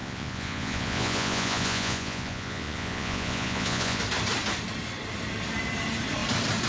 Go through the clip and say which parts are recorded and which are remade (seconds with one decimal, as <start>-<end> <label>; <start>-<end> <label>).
0.0-4.0 remade; 4.0-6.7 recorded